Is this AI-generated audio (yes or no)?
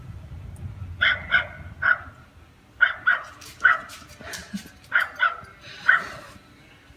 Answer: no